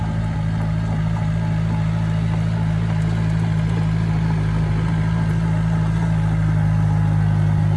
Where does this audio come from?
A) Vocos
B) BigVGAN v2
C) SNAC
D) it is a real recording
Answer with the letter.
D